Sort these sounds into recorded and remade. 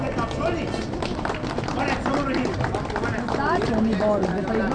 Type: recorded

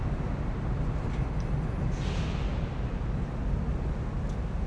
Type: recorded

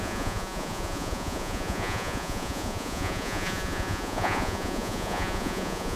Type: remade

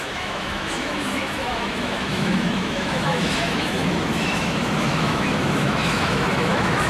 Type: remade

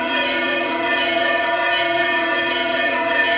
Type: remade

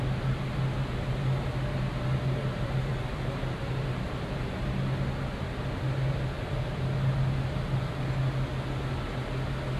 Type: recorded